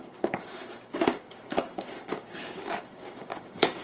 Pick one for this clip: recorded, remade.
remade